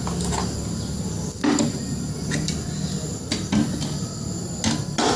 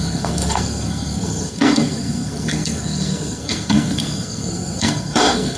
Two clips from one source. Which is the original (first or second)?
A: first